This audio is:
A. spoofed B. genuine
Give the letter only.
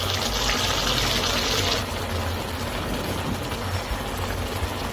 B